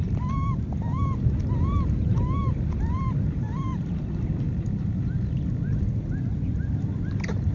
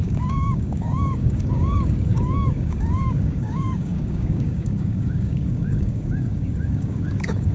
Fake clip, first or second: second